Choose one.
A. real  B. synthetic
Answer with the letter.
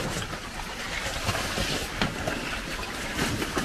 A